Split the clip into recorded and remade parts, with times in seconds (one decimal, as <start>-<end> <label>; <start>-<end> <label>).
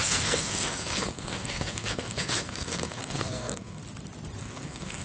0.0-3.8 remade; 3.8-4.4 recorded; 4.4-5.0 remade